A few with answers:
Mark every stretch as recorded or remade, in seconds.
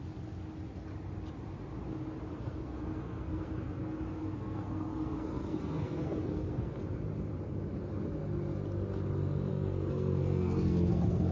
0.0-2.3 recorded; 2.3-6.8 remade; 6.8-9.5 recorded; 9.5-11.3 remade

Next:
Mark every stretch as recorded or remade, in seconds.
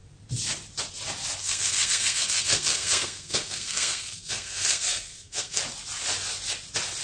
0.0-1.4 recorded; 1.4-5.6 remade; 5.6-7.0 recorded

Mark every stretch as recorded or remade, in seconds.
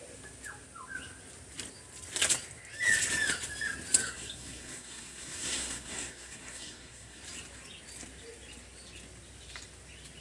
0.0-4.0 recorded; 4.0-7.2 remade; 7.2-10.2 recorded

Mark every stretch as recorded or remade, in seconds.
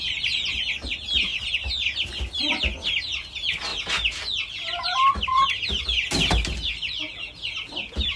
0.0-8.2 recorded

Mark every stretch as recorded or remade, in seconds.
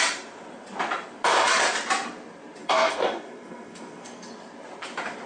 0.0-2.6 recorded; 2.6-4.3 remade; 4.3-5.3 recorded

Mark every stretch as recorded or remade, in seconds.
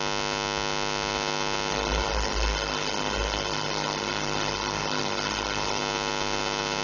0.0-1.7 recorded; 1.7-5.8 remade; 5.8-6.8 recorded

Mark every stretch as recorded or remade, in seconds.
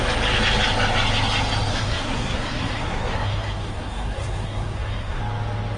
0.0-1.7 recorded; 1.7-5.2 remade; 5.2-5.8 recorded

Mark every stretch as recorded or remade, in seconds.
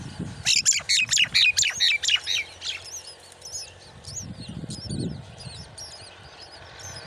0.0-7.1 recorded